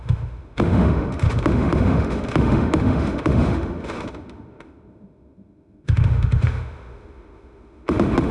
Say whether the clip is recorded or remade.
remade